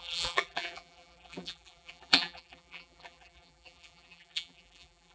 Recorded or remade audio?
remade